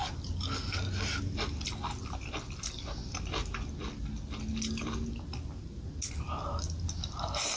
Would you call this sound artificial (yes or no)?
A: no